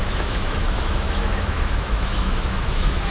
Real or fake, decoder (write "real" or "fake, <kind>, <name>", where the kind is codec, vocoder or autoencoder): fake, autoencoder, DAC-VAE